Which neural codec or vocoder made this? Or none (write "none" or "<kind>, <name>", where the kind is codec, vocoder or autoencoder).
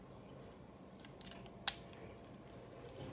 none